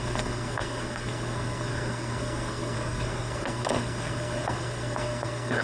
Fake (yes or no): yes